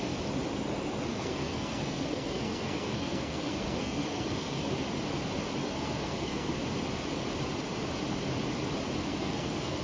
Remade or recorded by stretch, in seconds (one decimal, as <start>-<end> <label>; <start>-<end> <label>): 0.0-1.1 recorded; 1.1-4.7 remade; 4.7-5.6 recorded; 5.6-6.6 remade; 6.6-9.0 recorded; 9.0-9.8 remade